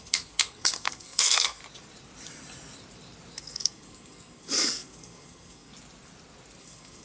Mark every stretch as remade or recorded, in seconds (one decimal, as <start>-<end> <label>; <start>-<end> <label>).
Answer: 0.0-1.6 remade; 1.6-3.4 recorded; 3.4-5.7 remade; 5.7-6.6 recorded; 6.6-7.0 remade